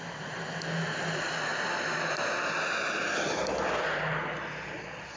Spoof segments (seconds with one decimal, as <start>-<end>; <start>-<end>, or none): none